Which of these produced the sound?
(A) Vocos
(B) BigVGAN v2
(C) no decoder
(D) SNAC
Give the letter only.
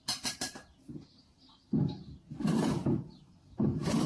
B